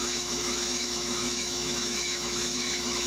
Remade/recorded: remade